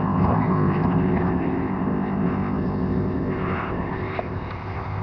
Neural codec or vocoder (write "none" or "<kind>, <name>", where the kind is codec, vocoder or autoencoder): codec, ZipCodec